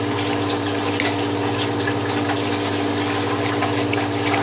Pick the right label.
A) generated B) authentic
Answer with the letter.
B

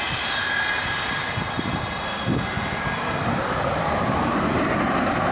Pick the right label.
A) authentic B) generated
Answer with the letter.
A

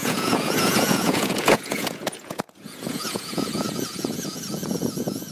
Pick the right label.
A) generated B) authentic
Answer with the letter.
A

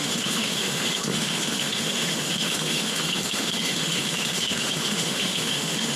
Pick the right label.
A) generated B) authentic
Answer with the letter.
A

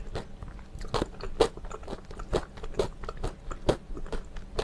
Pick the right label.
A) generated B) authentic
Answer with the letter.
B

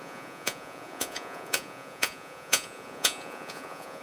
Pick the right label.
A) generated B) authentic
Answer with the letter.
A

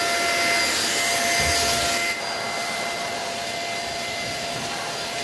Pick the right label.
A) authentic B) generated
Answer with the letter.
A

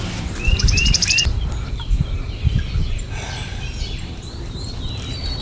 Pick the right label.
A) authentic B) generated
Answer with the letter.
A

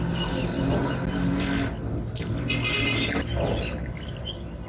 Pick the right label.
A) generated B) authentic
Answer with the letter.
B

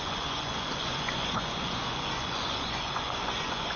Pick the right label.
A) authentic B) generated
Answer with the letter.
B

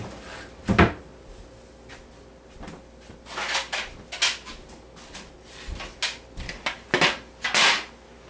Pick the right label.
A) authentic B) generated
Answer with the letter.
A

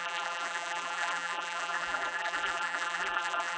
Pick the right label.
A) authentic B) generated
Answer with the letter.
B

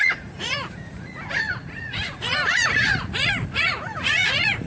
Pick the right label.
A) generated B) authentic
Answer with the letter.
A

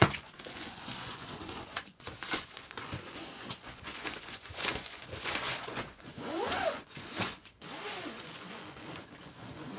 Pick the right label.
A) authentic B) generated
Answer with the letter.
B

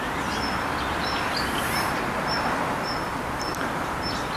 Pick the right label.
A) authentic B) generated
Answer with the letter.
A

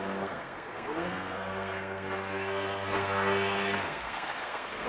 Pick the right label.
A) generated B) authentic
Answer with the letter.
A